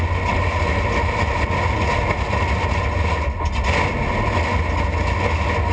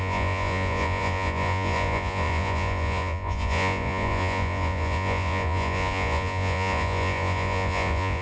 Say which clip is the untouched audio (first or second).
first